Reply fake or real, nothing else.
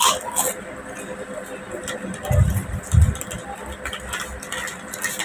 real